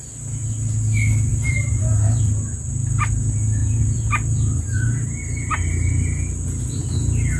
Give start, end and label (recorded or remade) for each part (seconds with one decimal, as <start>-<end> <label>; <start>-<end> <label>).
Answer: 0.0-1.3 recorded; 1.3-2.2 remade; 2.2-3.6 recorded; 3.6-5.5 remade; 5.5-7.4 recorded